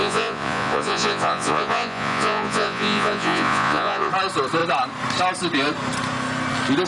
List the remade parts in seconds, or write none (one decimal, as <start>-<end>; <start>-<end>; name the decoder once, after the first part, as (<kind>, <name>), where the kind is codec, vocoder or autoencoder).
0.0-4.1 (vocoder, Vocos)